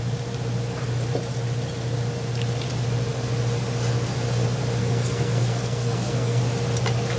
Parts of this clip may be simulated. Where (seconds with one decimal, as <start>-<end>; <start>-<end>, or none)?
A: 4.8-6.4